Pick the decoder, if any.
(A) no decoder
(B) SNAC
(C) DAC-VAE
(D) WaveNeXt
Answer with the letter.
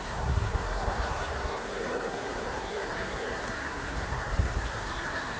B